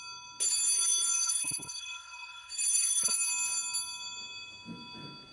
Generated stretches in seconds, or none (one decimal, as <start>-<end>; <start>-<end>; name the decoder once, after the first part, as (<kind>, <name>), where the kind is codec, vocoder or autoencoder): 1.2-3.1 (codec, HILCodec)